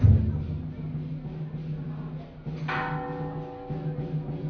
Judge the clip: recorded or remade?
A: recorded